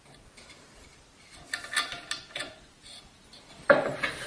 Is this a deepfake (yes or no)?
no